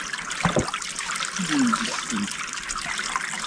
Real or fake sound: real